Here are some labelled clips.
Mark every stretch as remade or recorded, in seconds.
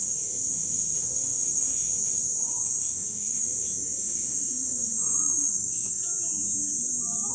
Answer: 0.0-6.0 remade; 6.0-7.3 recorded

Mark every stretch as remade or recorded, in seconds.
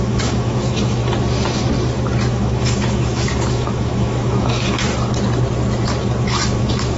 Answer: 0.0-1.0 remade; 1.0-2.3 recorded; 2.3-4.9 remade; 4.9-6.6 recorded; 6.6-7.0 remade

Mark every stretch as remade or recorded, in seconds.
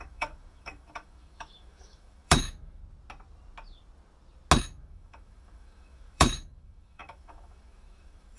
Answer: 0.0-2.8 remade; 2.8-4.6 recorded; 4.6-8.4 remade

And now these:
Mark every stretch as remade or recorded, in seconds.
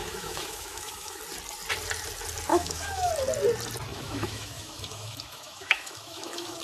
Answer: 0.0-1.2 remade; 1.2-2.5 recorded; 2.5-3.1 remade; 3.1-3.9 recorded; 3.9-6.6 remade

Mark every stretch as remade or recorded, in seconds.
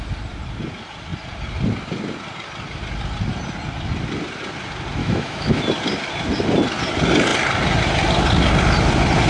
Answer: 0.0-5.0 recorded; 5.0-5.6 remade; 5.6-9.3 recorded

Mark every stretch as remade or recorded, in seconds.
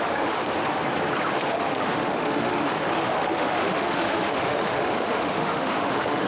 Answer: 0.0-0.4 remade; 0.4-1.5 recorded; 1.5-6.3 remade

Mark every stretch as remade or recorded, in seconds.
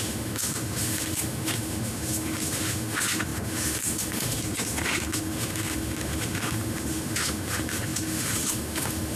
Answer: 0.0-9.2 remade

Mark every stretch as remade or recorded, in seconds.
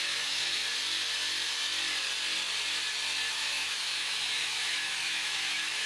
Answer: 0.0-0.6 remade; 0.6-3.3 recorded; 3.3-5.9 remade